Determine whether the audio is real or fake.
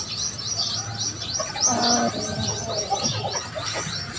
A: real